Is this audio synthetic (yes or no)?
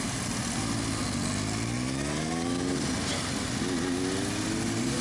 no